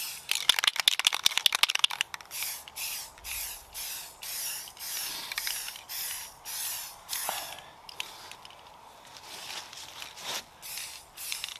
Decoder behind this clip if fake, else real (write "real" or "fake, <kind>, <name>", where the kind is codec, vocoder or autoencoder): real